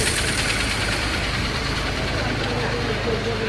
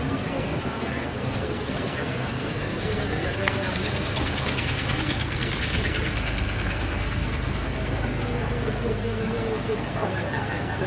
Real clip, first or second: first